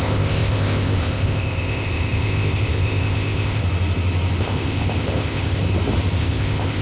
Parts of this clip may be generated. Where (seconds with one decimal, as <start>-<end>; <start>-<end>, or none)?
0.0-3.6; 4.4-5.6; 6.2-6.8